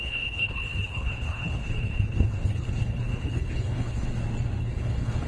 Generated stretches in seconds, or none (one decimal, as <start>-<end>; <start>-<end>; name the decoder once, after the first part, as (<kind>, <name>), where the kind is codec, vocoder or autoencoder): 0.0-4.1 (codec, HILCodec); 4.6-5.3